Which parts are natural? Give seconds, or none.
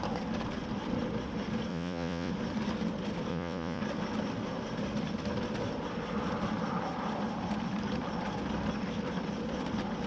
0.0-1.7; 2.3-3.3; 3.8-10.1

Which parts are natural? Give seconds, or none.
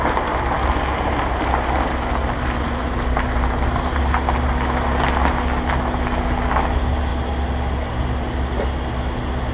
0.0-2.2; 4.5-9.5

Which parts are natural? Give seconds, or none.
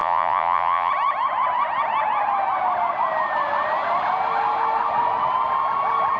0.9-6.2